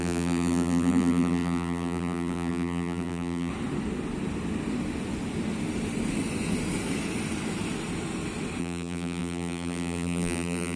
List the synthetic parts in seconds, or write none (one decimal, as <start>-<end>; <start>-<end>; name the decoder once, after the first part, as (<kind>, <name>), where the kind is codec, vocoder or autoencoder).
0.0-3.5 (vocoder, BigVGAN v2); 8.6-10.8